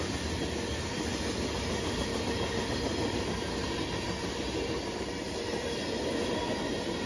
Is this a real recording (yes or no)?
yes